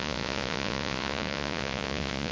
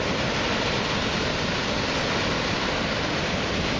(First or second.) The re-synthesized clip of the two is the first